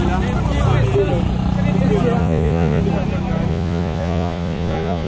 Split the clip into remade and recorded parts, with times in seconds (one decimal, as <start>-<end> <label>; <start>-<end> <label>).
0.0-2.2 recorded; 2.2-2.8 remade; 2.8-3.5 recorded; 3.5-5.1 remade

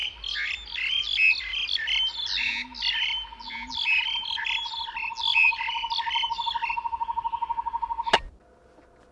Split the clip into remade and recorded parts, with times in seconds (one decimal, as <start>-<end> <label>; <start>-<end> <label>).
0.0-9.1 recorded

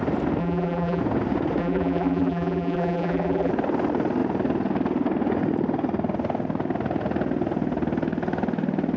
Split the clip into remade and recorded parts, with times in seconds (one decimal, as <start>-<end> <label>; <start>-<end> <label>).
0.0-0.4 recorded; 0.4-1.0 remade; 1.0-1.6 recorded; 1.6-3.5 remade; 3.5-9.0 recorded

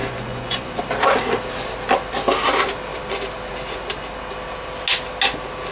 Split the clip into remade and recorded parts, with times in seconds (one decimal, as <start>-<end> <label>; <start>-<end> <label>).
0.0-0.8 remade; 0.8-5.7 recorded

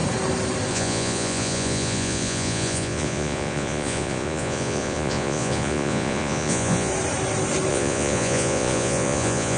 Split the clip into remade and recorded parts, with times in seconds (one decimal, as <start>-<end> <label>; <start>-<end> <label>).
0.0-0.7 recorded; 0.7-6.9 remade; 6.9-7.7 recorded; 7.7-9.6 remade

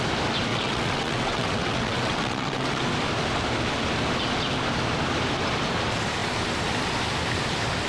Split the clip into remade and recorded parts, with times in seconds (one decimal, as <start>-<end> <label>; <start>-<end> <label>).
0.0-0.5 recorded; 0.5-2.8 remade; 2.8-7.9 recorded